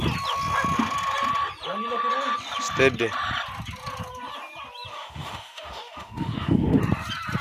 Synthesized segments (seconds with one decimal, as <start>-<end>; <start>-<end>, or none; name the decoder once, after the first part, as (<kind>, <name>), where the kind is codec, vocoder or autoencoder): 4.9-6.8 (autoencoder, DAC-VAE)